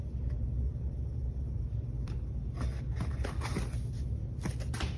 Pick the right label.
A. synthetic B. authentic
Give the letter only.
B